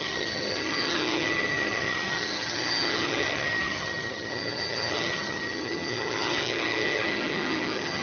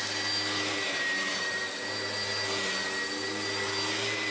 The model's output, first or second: first